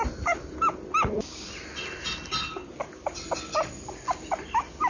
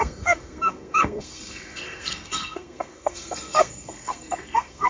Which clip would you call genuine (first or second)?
first